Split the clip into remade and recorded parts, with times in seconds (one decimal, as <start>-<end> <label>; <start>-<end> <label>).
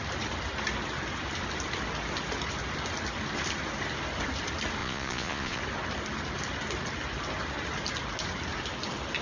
0.0-4.8 recorded; 4.8-5.6 remade; 5.6-9.2 recorded